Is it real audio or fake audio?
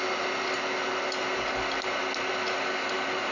real